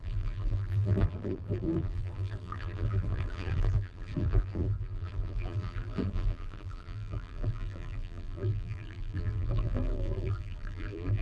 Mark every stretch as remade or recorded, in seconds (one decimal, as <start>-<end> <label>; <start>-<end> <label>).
0.0-11.2 remade